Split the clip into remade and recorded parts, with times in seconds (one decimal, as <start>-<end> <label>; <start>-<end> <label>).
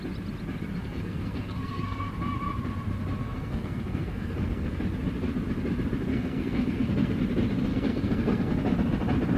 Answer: 0.0-0.8 recorded; 0.8-2.1 remade; 2.1-3.2 recorded; 3.2-4.8 remade; 4.8-6.1 recorded; 6.1-7.2 remade; 7.2-7.7 recorded; 7.7-8.5 remade; 8.5-9.4 recorded